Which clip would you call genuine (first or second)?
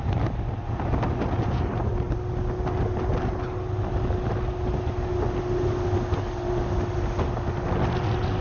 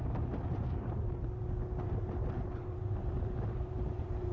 first